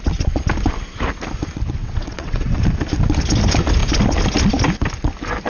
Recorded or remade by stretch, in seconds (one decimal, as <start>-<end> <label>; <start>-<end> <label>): 0.0-1.8 recorded; 1.8-2.6 remade; 2.6-5.5 recorded